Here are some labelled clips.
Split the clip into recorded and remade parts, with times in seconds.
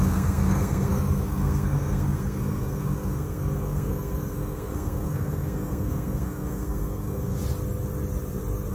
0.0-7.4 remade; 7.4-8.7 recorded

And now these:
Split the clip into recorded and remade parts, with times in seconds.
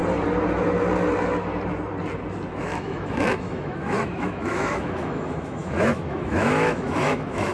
0.0-2.5 recorded; 2.5-7.5 remade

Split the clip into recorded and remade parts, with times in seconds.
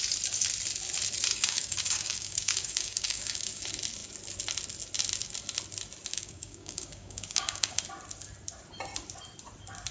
0.0-1.3 recorded; 1.3-3.6 remade; 3.6-6.1 recorded; 6.1-7.8 remade; 7.8-9.9 recorded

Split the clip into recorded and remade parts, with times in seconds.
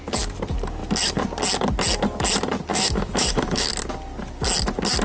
0.0-2.7 recorded; 2.7-3.7 remade; 3.7-5.0 recorded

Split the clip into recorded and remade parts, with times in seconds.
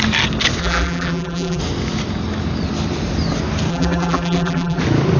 0.0-0.6 recorded; 0.6-1.6 remade; 1.6-3.7 recorded; 3.7-4.8 remade; 4.8-5.2 recorded